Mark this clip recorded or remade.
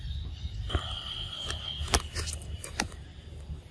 recorded